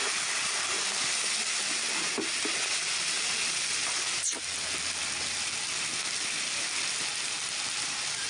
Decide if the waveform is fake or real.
real